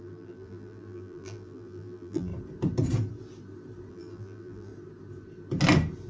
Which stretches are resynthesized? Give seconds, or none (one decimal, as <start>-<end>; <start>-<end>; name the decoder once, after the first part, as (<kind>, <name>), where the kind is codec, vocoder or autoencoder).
0.0-2.3 (vocoder, BigVGAN v2); 3.9-4.7